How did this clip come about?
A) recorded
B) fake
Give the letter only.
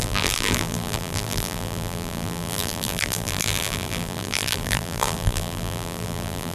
B